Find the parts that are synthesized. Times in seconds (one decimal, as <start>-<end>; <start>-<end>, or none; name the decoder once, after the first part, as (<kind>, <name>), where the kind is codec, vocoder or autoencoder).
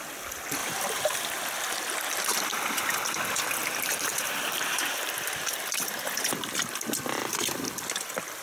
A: 0.6-1.4 (vocoder, BigVGAN v2); 3.6-5.1